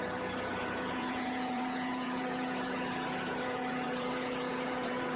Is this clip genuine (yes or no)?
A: no